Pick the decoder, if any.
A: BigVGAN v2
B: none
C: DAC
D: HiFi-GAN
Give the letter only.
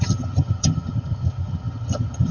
D